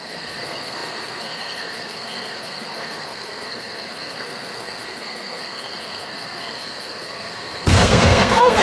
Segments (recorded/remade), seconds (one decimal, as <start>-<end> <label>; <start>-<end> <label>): 0.0-8.6 remade